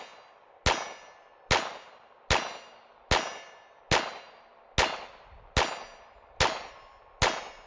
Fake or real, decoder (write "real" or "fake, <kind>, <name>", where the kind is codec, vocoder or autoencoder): real